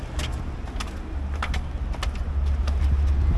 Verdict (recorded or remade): recorded